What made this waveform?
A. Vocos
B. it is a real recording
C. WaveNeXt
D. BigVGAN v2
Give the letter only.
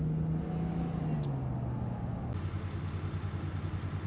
B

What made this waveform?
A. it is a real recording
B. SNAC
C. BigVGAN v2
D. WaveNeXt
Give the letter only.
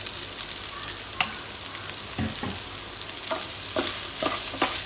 A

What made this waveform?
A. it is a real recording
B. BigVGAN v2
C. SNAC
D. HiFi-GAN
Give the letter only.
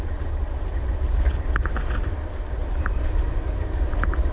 B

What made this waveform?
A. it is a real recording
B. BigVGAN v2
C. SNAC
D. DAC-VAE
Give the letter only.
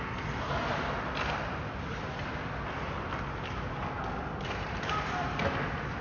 A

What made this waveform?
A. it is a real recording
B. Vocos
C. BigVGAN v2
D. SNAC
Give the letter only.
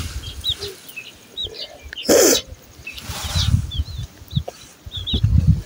A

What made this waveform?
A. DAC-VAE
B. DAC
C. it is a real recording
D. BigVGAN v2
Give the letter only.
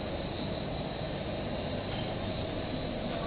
C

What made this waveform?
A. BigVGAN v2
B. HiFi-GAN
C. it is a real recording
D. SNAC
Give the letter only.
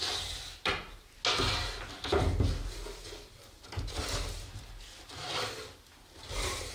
C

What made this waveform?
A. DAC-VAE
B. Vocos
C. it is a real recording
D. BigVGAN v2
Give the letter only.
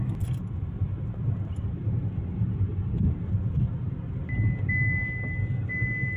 C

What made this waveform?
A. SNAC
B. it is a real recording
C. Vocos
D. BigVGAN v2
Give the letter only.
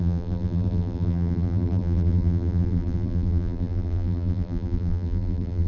D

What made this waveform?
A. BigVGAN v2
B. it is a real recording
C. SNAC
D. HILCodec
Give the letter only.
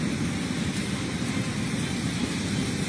B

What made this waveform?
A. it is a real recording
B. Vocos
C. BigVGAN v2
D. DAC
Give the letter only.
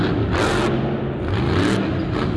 A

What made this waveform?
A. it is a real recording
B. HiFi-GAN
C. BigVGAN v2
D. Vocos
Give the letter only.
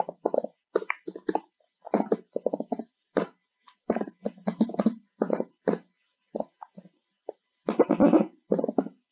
A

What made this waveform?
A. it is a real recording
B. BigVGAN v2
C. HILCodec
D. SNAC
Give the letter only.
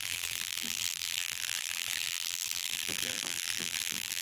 B